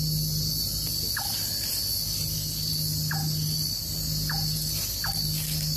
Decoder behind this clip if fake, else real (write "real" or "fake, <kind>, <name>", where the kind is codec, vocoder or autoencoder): real